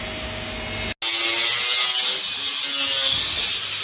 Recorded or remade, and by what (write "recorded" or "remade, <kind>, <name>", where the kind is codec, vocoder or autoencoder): recorded